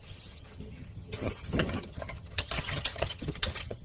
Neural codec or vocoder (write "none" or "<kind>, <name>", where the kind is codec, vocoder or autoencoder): vocoder, HiFi-GAN